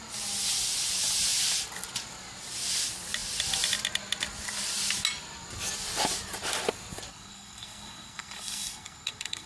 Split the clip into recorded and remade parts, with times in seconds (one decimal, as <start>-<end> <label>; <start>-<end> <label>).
0.0-7.1 recorded; 7.1-9.5 remade